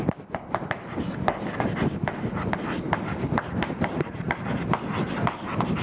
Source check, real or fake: real